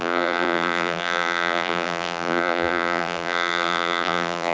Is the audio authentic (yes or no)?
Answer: no